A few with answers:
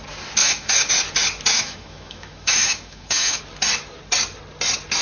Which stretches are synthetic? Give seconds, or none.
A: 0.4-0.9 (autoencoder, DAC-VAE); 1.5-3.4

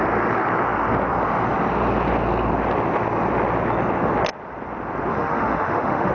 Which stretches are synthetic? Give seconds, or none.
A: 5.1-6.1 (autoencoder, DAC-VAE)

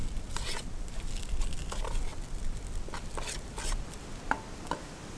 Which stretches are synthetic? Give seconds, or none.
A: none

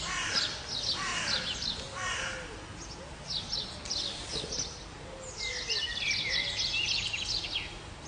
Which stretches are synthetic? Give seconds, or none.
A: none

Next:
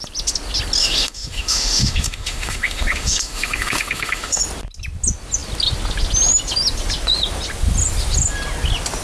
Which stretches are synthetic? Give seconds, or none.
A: 0.8-4.4 (autoencoder, DAC-VAE)

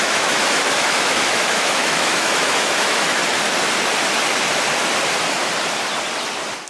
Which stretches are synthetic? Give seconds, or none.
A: 0.0-3.2 (autoencoder, DAC-VAE)

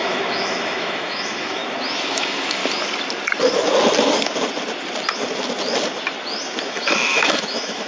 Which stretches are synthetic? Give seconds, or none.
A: 0.0-1.6 (autoencoder, DAC-VAE); 2.1-2.6; 6.7-7.9